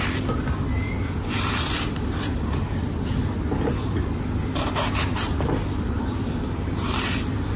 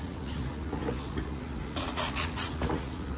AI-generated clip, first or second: second